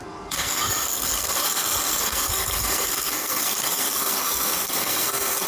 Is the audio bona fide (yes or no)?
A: no